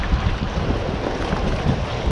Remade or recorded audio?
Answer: recorded